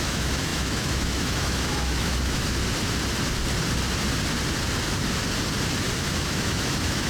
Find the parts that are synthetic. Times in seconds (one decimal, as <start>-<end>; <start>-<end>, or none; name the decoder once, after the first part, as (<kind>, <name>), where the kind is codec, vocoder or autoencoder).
0.0-2.4 (autoencoder, DAC-VAE); 6.2-7.1